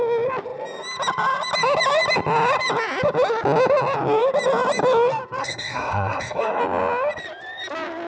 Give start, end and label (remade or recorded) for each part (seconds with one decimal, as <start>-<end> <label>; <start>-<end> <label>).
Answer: 0.0-5.4 recorded; 5.4-6.6 remade; 6.6-8.1 recorded